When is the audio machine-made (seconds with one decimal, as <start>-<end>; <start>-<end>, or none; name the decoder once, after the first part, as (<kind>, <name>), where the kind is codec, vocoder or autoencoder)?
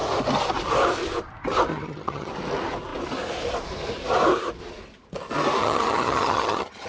1.7-2.3 (vocoder, HiFi-GAN); 5.6-6.9